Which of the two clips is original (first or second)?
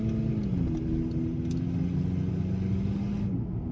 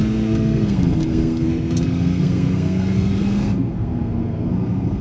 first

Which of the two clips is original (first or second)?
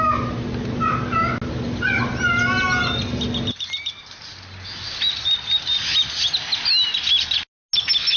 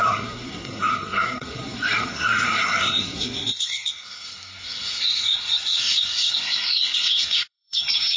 first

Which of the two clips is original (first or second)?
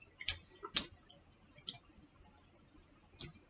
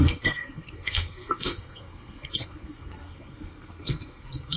first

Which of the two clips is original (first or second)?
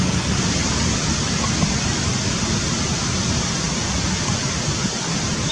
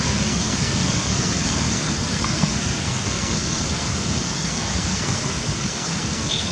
first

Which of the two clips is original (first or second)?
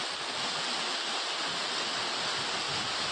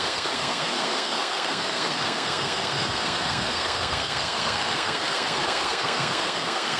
first